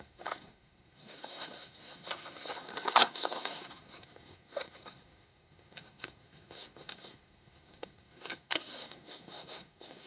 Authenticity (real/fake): fake